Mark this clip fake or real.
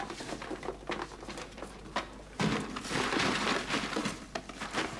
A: real